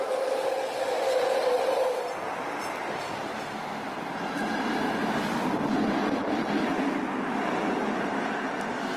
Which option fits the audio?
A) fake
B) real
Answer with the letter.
B